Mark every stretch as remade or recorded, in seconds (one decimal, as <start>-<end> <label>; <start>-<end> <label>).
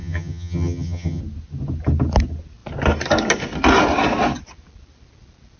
0.0-1.2 remade; 1.2-5.6 recorded